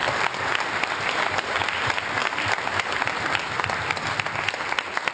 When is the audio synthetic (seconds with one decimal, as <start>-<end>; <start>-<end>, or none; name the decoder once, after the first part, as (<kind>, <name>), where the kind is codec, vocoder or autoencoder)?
none